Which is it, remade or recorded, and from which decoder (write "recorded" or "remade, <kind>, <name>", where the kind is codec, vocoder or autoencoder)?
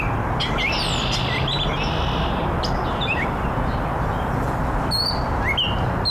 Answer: recorded